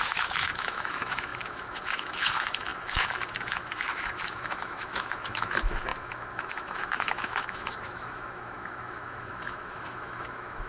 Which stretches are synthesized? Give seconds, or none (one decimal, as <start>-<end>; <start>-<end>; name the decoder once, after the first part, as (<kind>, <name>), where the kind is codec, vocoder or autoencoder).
0.0-10.7 (autoencoder, DAC-VAE)